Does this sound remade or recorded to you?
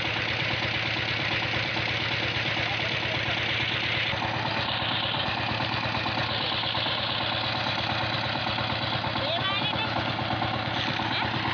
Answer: recorded